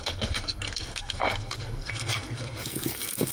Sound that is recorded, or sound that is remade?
remade